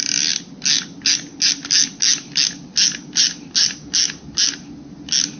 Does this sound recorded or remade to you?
recorded